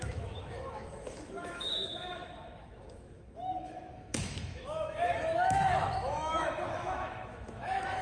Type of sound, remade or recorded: remade